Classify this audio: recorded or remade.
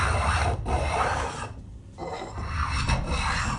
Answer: recorded